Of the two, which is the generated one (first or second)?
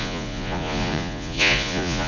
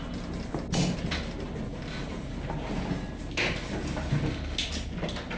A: first